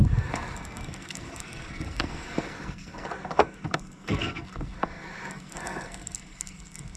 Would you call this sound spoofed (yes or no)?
yes